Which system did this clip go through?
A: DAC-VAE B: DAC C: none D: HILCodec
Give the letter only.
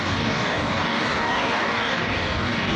B